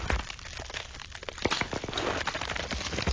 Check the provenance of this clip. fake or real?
real